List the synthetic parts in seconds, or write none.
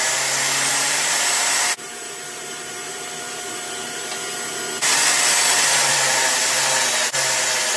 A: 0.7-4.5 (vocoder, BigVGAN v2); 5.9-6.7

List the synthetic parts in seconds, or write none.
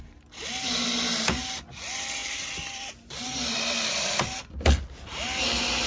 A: 2.2-4.6 (vocoder, BigVGAN v2)